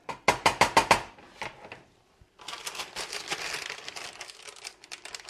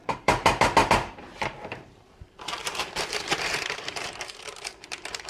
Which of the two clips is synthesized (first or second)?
second